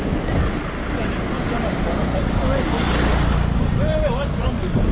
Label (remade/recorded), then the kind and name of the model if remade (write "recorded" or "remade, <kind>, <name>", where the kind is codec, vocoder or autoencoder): recorded